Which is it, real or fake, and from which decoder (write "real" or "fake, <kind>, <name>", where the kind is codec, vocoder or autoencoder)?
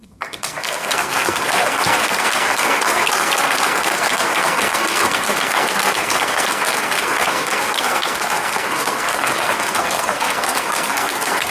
fake, codec, SNAC